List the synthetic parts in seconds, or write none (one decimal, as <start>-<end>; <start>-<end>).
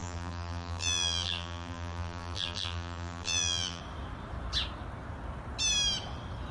0.0-3.8